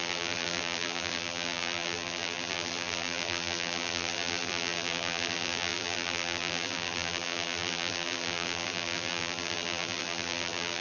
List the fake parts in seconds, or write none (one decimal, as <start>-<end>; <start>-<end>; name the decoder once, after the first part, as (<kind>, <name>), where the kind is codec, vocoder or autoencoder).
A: 0.0-10.8 (vocoder, BigVGAN v2)